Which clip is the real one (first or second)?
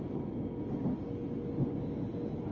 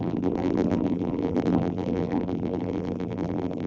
first